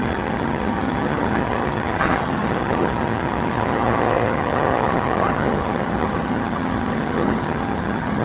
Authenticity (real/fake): fake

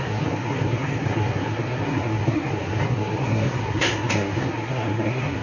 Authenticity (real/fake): fake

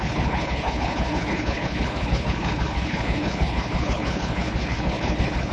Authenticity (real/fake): fake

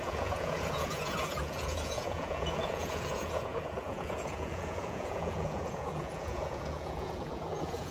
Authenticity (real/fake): fake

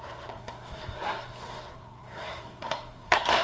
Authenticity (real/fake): fake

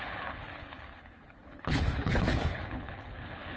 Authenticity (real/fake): fake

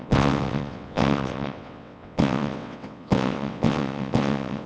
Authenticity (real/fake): fake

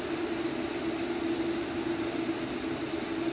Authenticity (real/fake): real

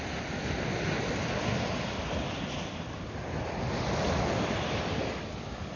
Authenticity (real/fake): real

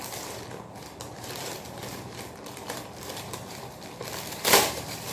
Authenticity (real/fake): fake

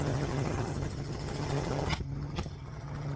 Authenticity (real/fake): fake